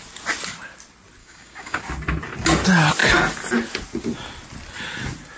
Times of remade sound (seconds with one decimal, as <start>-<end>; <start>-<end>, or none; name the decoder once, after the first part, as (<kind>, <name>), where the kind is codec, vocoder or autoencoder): 1.2-1.8 (codec, DAC)